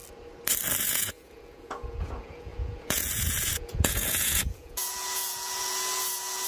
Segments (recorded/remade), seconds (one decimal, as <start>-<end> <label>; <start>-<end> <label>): 0.0-0.8 recorded; 0.8-6.5 remade